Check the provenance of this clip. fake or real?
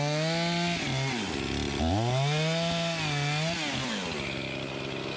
real